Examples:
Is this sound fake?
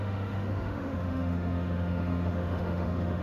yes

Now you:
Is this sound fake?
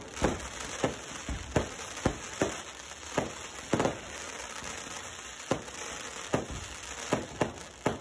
no